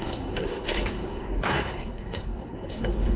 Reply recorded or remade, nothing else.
remade